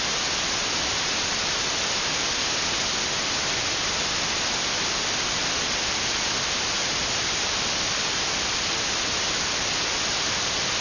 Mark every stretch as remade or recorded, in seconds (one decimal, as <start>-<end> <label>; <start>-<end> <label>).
0.0-10.8 recorded